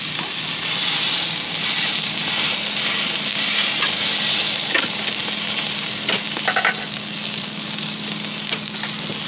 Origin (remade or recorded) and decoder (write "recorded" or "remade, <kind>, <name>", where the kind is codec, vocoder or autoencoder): recorded